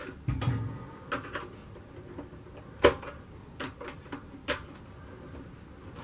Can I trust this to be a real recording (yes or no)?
yes